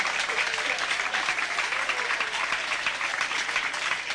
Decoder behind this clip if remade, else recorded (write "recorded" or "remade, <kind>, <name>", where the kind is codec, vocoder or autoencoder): recorded